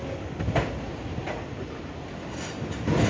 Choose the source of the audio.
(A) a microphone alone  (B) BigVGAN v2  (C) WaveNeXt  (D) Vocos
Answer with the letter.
A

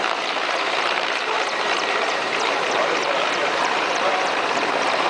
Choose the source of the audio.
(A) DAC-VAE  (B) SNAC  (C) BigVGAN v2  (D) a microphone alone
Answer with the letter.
C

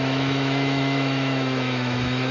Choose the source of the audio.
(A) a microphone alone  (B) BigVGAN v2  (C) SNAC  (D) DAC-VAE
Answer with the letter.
D